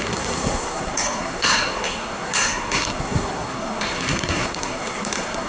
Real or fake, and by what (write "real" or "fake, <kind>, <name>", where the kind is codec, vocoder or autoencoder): fake, codec, SNAC